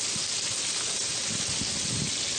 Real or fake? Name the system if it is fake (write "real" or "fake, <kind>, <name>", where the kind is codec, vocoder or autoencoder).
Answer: real